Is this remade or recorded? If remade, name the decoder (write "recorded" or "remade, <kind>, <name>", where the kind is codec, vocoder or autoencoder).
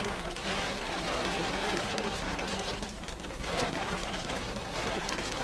remade, codec, SNAC